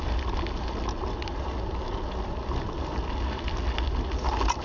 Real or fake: real